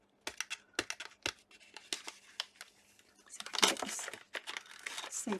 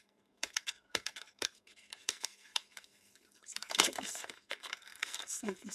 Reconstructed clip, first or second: second